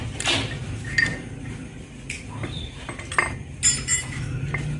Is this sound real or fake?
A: real